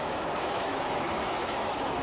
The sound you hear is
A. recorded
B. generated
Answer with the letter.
B